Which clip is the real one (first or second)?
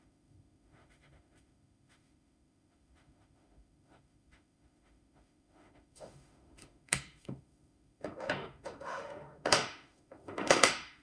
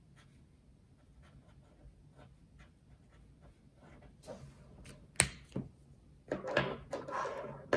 second